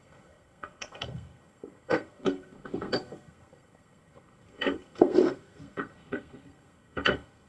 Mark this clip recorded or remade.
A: remade